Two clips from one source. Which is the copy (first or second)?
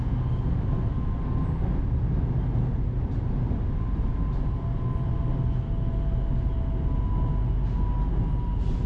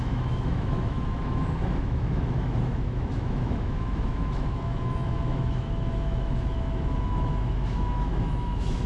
second